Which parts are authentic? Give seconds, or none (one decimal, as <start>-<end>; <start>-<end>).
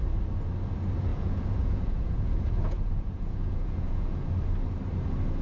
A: 0.0-1.1; 4.3-5.4